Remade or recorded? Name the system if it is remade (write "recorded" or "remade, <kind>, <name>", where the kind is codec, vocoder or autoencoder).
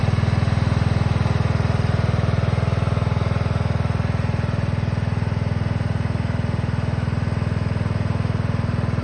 recorded